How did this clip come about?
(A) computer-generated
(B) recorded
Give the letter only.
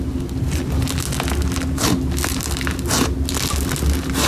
B